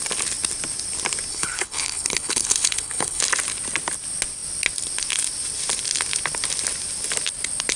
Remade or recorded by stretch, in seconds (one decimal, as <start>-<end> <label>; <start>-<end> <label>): 0.0-1.3 recorded; 1.3-3.2 remade; 3.2-7.8 recorded